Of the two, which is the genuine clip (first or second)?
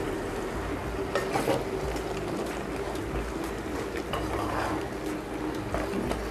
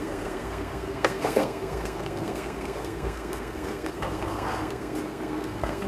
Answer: first